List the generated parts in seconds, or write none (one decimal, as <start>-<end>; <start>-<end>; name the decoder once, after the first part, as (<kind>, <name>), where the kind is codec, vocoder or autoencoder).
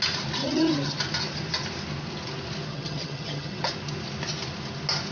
0.4-1.0 (vocoder, HiFi-GAN); 2.7-3.7